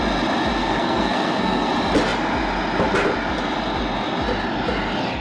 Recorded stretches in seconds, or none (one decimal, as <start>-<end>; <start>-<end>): 0.0-0.6; 1.7-5.2